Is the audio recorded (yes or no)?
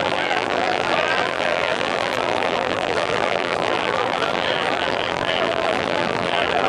no